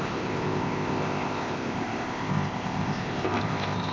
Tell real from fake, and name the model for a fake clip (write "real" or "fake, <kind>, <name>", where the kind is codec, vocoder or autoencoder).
fake, codec, ZipCodec